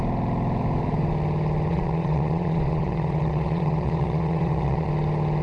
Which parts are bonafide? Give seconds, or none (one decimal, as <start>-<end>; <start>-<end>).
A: 0.0-1.7; 4.9-5.4